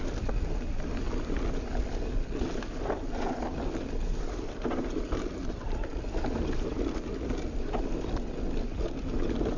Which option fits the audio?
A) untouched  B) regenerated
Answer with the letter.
A